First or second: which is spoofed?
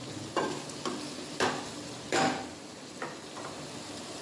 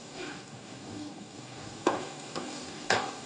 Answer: second